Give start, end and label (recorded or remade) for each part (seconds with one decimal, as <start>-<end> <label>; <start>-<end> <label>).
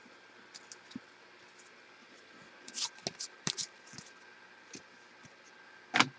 0.0-2.0 recorded; 2.0-2.5 remade; 2.5-6.2 recorded